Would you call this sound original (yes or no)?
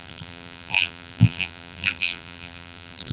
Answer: no